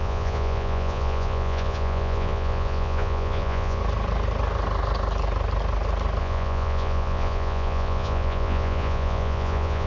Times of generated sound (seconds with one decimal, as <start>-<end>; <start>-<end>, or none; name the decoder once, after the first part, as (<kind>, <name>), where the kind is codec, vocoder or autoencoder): 0.0-3.8 (vocoder, Vocos); 6.2-9.9